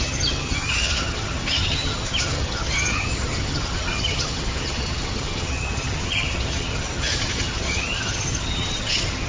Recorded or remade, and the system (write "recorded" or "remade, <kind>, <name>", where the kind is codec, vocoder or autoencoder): remade, vocoder, HiFi-GAN